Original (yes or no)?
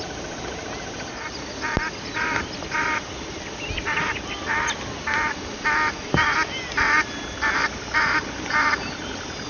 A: yes